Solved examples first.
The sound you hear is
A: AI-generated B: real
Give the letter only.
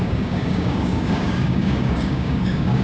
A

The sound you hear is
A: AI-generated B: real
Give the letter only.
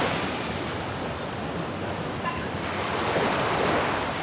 B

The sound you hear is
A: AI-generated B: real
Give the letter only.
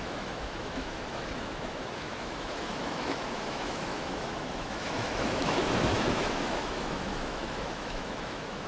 A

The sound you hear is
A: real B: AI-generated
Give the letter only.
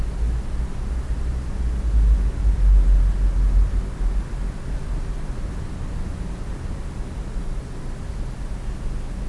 A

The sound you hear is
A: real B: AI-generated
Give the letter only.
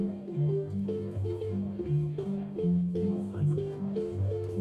B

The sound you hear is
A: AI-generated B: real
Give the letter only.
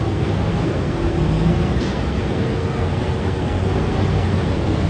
A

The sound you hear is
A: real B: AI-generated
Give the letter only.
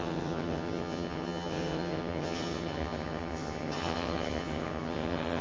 B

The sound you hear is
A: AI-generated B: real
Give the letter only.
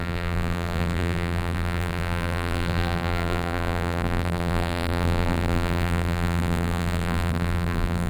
A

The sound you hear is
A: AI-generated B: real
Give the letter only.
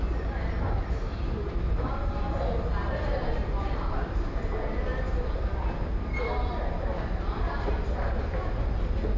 B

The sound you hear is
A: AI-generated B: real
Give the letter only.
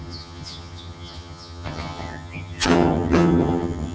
A